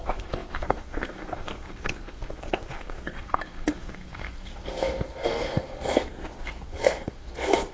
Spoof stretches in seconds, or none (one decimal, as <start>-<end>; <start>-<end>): 0.0-7.7